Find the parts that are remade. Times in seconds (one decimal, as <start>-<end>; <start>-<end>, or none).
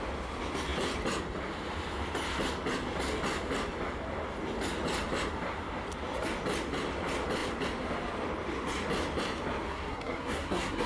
9.7-10.9